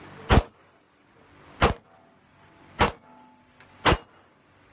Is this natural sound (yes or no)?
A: yes